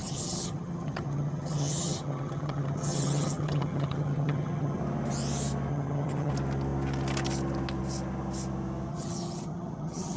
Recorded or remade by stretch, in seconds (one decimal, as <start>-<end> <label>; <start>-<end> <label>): 0.0-4.8 remade; 4.8-5.7 recorded; 5.7-6.3 remade; 6.3-8.9 recorded; 8.9-10.2 remade

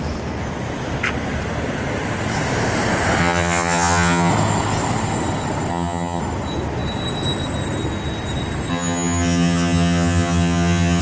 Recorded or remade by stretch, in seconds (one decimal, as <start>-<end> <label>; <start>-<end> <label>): 0.0-3.2 recorded; 3.2-4.3 remade; 4.3-5.7 recorded; 5.7-6.2 remade; 6.2-8.7 recorded; 8.7-11.0 remade

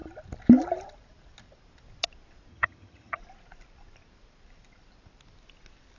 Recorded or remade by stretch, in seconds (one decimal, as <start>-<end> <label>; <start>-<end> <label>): 0.0-2.5 recorded; 2.5-3.2 remade; 3.2-6.0 recorded

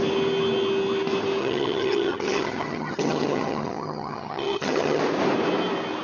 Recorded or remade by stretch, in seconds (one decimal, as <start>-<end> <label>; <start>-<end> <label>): 0.0-1.4 recorded; 1.4-5.0 remade; 5.0-6.0 recorded

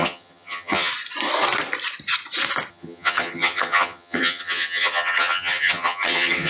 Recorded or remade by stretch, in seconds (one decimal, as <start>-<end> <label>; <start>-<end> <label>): 0.0-0.9 remade; 0.9-2.7 recorded; 2.7-6.5 remade

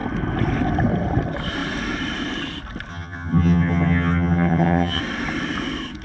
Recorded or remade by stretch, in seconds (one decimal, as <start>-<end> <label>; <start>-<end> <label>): 0.0-2.9 recorded; 2.9-5.0 remade; 5.0-6.0 recorded

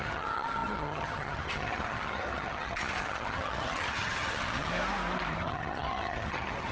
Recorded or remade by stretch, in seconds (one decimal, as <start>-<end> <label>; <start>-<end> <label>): 0.0-4.7 remade; 4.7-5.3 recorded; 5.3-6.7 remade

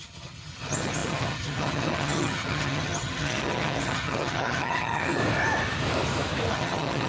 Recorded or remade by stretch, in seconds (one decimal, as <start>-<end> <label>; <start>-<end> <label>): 0.0-5.2 remade; 5.2-6.5 recorded; 6.5-7.1 remade